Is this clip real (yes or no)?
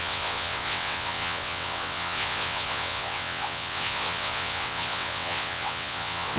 no